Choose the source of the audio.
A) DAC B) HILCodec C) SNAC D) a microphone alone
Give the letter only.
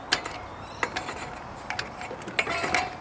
D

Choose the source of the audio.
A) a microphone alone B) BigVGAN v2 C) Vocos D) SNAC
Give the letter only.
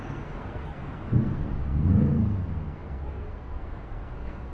D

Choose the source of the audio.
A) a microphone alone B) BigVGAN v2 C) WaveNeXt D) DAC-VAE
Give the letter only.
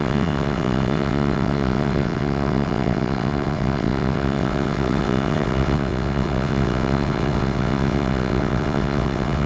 C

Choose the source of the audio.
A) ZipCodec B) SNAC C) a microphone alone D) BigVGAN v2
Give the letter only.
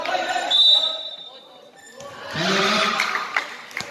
C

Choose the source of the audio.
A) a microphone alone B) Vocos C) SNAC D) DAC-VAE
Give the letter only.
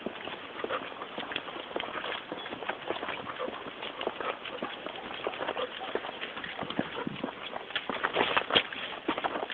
A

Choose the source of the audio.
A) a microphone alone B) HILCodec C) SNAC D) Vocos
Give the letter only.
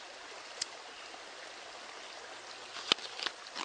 A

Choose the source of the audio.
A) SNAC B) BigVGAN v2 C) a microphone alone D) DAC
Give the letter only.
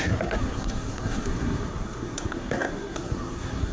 A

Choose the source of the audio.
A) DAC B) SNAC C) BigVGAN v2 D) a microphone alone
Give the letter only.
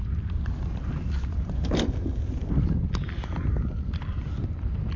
D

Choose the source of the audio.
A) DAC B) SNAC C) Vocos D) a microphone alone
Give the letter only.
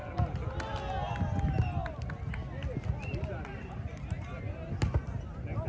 D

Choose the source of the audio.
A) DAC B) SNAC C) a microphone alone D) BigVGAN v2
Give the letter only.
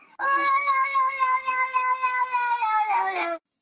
B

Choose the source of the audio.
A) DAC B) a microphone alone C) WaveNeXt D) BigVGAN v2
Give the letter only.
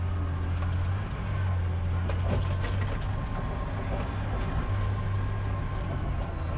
B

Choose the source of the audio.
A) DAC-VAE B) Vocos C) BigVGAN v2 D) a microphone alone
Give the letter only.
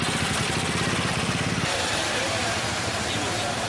D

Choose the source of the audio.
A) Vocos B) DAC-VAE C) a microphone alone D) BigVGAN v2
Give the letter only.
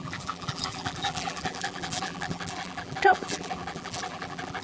D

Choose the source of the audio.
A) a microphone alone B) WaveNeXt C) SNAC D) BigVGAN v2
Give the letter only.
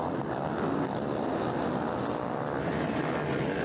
A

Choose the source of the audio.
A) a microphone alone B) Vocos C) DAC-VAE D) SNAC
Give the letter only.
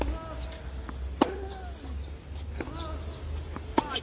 A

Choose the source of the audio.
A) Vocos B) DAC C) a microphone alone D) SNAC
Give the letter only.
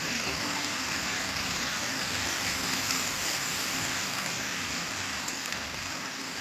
B